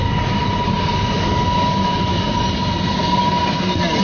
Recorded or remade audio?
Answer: recorded